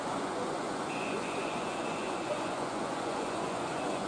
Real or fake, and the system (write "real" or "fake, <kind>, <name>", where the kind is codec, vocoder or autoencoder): fake, vocoder, Vocos